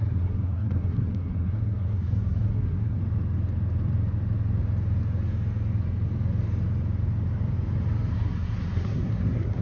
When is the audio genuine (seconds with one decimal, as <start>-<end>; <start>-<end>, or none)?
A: 3.0-8.1